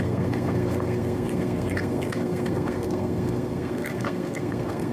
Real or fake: fake